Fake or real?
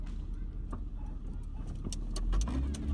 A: real